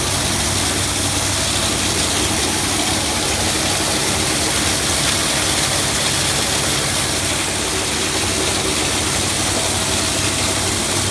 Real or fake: real